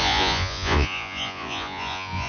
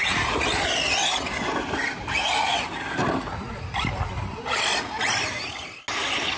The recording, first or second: second